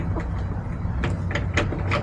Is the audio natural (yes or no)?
yes